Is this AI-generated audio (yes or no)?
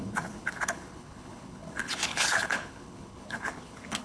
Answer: yes